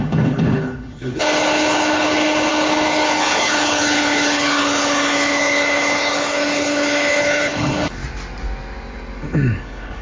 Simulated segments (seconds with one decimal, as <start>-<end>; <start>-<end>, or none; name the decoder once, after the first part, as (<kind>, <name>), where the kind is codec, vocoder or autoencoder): 0.0-8.0 (codec, HILCodec); 9.2-10.0